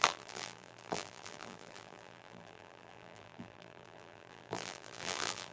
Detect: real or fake fake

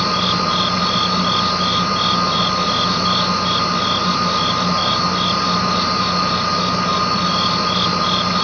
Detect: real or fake real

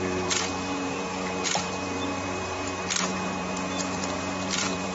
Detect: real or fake fake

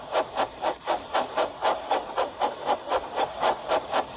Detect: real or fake fake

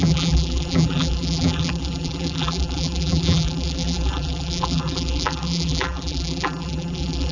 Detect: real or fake fake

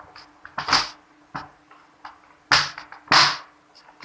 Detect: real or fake real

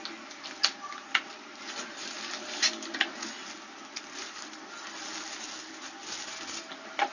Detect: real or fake real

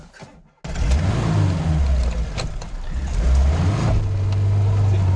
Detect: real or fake real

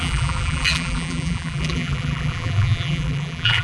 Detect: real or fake fake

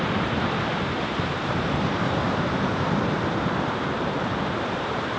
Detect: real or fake fake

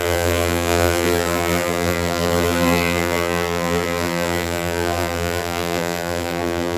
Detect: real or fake fake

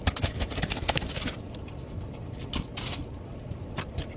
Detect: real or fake real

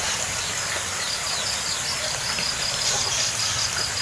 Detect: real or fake real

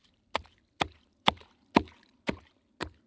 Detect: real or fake fake